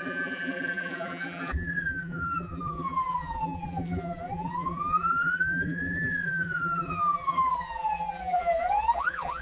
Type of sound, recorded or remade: remade